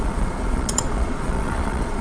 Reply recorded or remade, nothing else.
remade